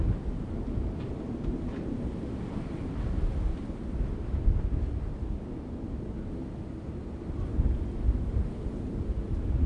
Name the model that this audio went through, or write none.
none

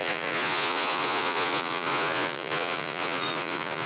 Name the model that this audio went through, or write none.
vocoder, Vocos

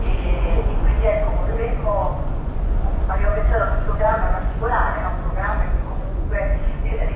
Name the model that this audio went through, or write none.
vocoder, Vocos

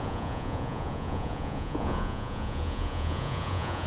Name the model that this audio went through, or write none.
vocoder, Vocos